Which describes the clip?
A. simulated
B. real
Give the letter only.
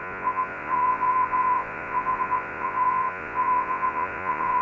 A